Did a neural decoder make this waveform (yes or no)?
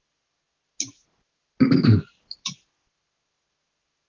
no